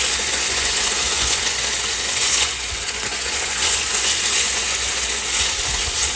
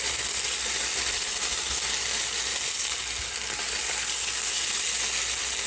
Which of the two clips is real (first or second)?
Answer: second